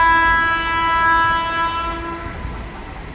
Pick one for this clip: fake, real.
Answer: real